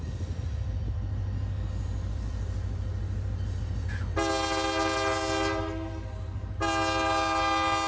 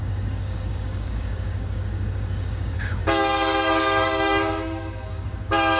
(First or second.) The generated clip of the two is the second